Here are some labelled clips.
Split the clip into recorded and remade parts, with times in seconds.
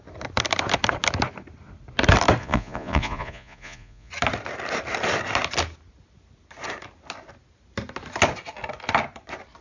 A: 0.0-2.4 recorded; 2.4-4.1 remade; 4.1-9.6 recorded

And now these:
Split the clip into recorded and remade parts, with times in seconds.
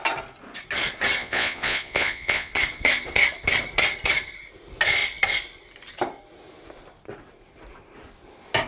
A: 0.0-1.2 recorded; 1.2-2.5 remade; 2.5-8.7 recorded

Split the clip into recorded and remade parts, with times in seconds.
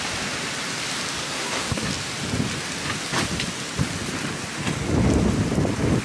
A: 0.0-1.2 recorded; 1.2-1.9 remade; 1.9-6.0 recorded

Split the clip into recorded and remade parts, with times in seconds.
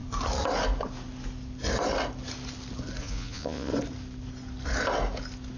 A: 0.0-3.0 recorded; 3.0-3.7 remade; 3.7-5.6 recorded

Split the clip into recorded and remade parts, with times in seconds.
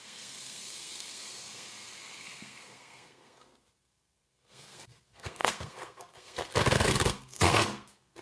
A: 0.0-8.2 remade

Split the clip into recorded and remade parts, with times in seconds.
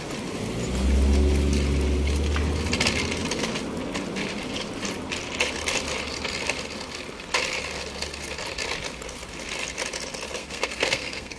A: 0.0-10.4 recorded; 10.4-11.4 remade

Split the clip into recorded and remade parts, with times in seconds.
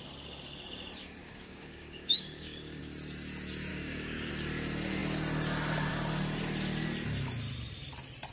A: 0.0-1.2 recorded; 1.2-2.8 remade; 2.8-3.7 recorded; 3.7-4.3 remade; 4.3-8.3 recorded